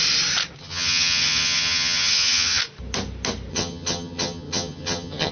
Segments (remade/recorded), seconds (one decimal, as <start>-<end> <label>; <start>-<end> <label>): 0.0-0.6 recorded; 0.6-2.6 remade; 2.6-3.5 recorded; 3.5-5.3 remade